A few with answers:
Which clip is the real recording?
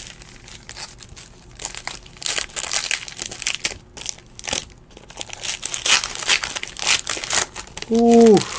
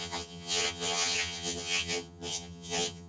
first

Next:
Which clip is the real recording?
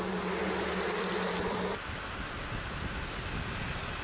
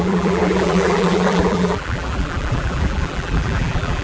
first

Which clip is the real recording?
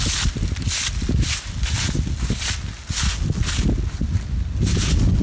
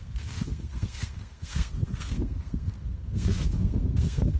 first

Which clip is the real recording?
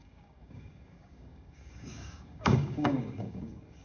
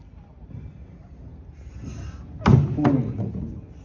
second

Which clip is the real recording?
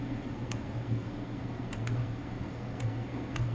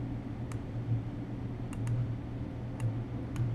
second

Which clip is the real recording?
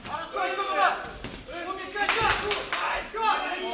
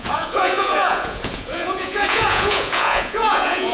first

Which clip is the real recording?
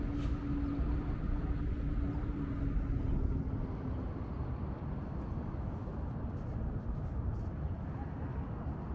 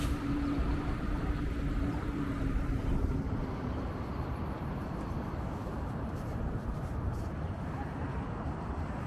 first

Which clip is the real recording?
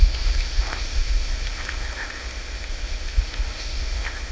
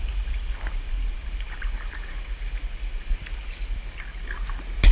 second